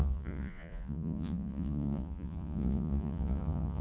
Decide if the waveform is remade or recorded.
remade